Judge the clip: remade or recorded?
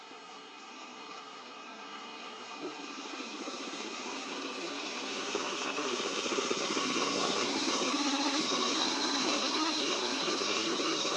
remade